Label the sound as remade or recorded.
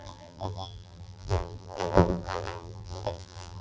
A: remade